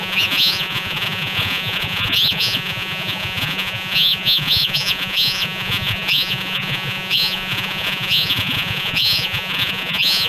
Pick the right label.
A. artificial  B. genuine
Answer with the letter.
A